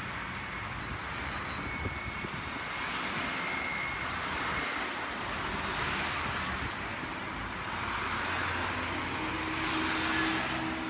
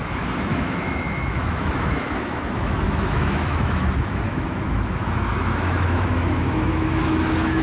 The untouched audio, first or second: first